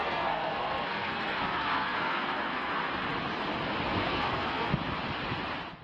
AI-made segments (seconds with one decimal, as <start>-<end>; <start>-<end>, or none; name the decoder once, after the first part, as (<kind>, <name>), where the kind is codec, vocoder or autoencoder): 0.0-2.7 (codec, SNAC); 3.9-4.7